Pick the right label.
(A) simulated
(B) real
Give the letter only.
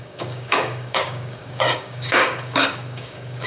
A